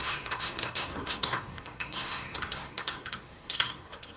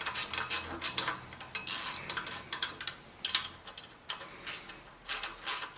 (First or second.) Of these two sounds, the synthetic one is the first